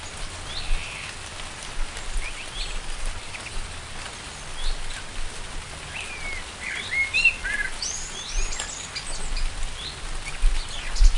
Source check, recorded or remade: recorded